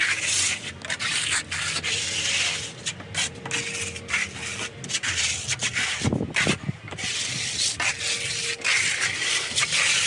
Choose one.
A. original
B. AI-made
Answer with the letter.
A